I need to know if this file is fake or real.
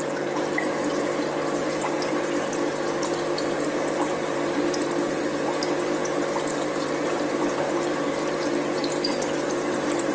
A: fake